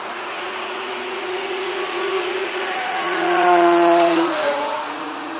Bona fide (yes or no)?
no